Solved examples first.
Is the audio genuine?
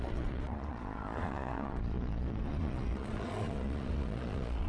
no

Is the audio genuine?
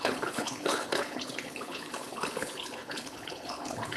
no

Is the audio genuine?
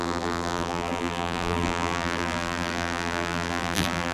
no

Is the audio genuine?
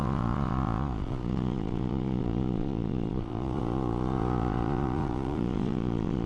no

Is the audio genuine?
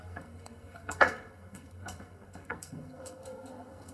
no